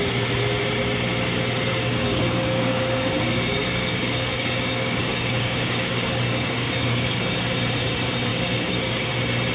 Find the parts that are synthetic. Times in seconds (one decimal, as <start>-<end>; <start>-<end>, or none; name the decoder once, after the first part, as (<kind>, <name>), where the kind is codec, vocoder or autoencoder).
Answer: 1.7-3.1 (codec, DAC); 3.6-7.2; 8.3-9.1